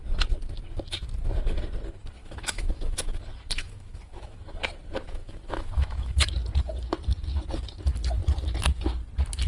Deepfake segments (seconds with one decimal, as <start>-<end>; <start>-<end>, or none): 2.2-3.2; 3.6-4.4; 5.1-6.3